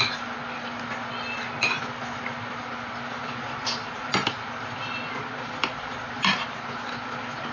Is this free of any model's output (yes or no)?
yes